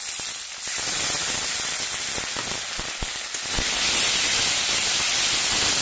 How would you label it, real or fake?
real